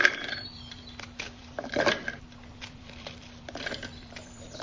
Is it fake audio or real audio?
fake